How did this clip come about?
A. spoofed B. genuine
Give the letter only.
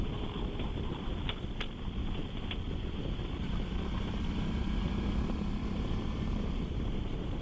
A